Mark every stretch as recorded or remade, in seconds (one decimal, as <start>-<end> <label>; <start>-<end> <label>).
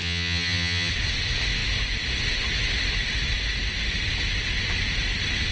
0.0-0.9 remade; 0.9-5.5 recorded